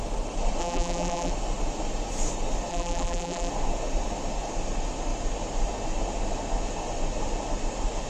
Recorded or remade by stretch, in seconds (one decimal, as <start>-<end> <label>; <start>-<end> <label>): 0.0-0.6 recorded; 0.6-1.3 remade; 1.3-2.7 recorded; 2.7-3.5 remade; 3.5-8.1 recorded